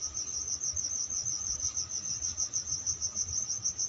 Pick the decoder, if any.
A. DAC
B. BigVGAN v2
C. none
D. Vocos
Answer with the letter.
C